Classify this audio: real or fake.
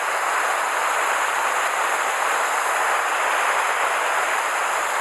real